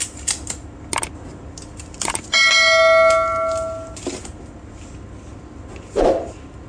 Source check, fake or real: real